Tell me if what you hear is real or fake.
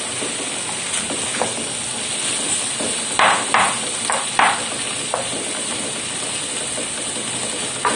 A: real